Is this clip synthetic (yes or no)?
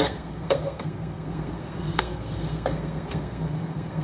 yes